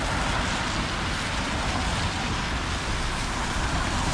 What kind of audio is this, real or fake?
real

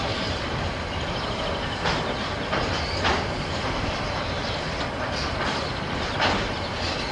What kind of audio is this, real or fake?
real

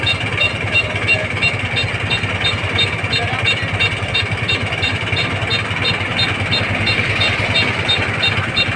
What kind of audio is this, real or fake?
real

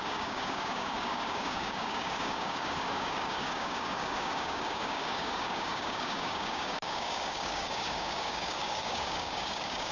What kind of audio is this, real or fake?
fake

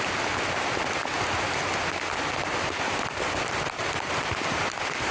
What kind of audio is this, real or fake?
real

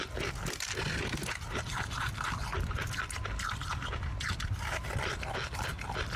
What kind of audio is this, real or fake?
real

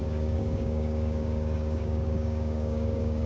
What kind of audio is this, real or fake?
fake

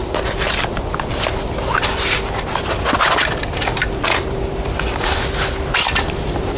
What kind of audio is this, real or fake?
real